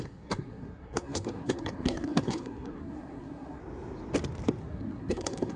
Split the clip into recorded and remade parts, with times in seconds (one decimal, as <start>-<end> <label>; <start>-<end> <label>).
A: 0.0-3.6 remade; 3.6-4.6 recorded; 4.6-5.6 remade